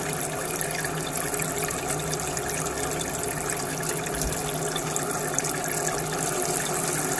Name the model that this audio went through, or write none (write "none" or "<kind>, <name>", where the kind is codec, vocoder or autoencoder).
none